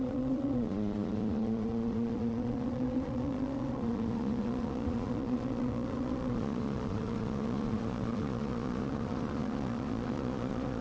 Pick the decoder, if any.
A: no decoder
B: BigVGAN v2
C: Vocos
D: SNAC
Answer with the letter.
C